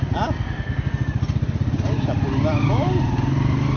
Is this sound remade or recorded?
recorded